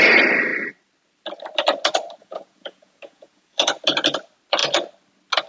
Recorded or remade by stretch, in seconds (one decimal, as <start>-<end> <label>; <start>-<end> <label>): 0.0-2.2 recorded; 2.2-3.6 remade; 3.6-5.5 recorded